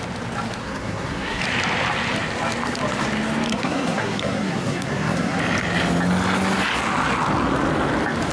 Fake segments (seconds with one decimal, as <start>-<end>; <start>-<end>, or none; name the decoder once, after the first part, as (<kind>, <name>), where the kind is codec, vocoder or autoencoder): 0.6-1.4 (codec, SNAC); 3.5-5.4